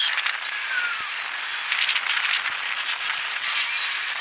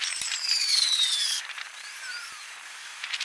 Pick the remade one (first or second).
second